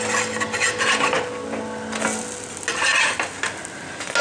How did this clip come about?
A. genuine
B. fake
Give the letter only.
A